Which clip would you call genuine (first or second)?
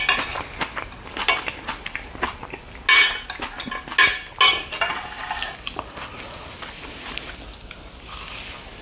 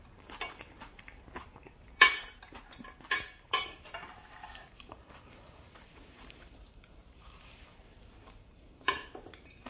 first